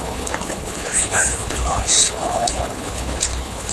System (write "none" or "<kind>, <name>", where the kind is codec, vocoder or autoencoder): codec, HILCodec